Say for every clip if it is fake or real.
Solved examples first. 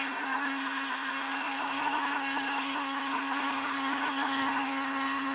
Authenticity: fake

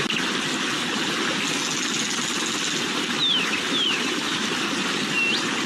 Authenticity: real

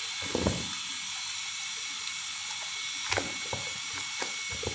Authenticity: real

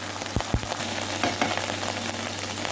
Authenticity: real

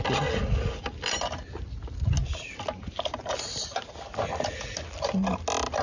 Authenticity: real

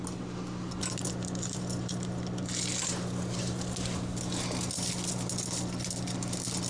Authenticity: real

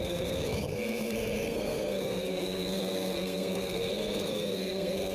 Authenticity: fake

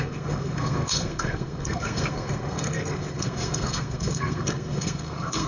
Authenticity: fake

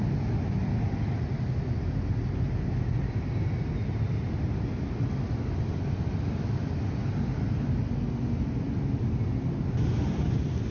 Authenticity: real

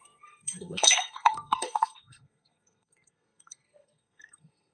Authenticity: fake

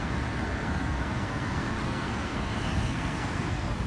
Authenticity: fake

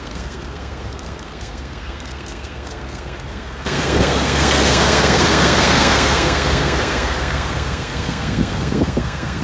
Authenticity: fake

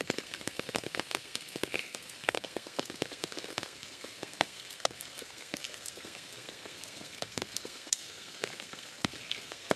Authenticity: fake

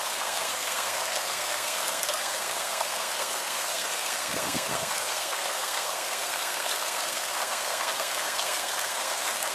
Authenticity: fake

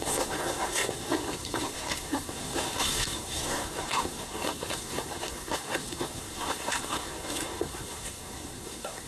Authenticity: fake